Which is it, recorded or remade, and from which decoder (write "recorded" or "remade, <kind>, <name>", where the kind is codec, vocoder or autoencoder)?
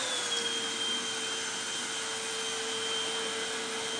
recorded